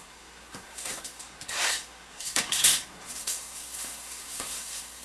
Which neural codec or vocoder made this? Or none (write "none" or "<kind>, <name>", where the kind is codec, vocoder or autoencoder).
codec, SNAC